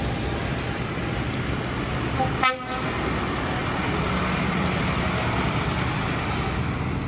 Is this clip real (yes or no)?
yes